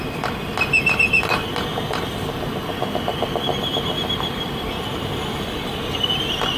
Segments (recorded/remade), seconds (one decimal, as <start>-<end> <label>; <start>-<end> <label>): 0.0-3.1 recorded; 3.1-6.6 remade